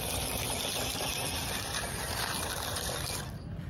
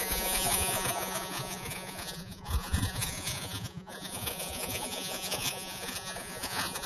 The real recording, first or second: first